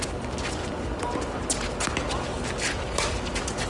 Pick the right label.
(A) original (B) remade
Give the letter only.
A